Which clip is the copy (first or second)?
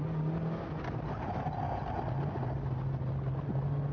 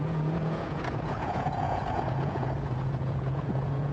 second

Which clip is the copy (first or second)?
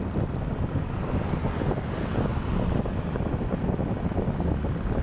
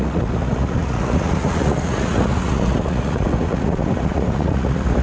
second